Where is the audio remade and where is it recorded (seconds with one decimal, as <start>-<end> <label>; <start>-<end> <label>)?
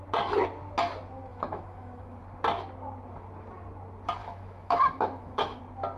0.0-1.3 recorded; 1.3-2.2 remade; 2.2-4.2 recorded; 4.2-5.6 remade; 5.6-6.0 recorded